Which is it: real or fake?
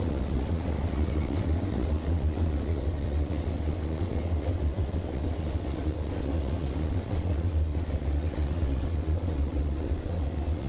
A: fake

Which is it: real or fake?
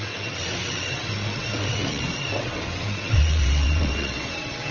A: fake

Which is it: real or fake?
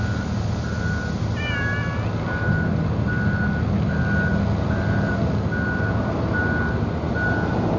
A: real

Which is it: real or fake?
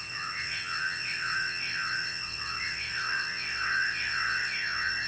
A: fake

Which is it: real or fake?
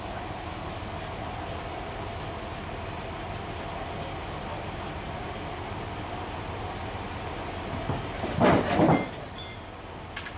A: real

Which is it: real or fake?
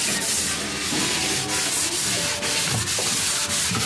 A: real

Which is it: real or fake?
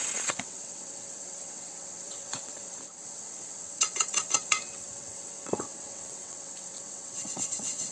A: fake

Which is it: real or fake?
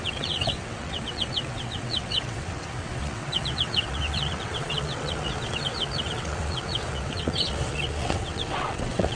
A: fake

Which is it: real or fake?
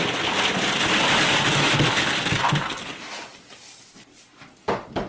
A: real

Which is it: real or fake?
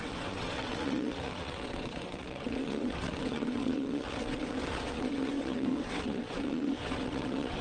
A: fake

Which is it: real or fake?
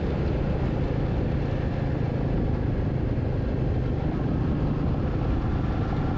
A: real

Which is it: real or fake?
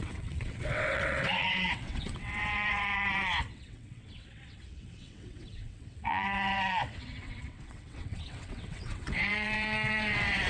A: fake